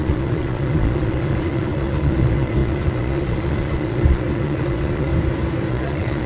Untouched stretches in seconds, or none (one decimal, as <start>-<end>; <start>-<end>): 5.1-5.7